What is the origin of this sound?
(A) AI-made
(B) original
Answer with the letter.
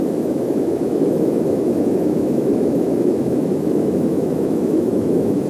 A